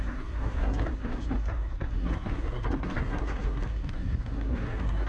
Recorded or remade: remade